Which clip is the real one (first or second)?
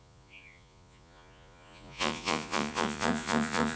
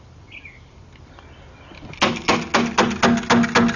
second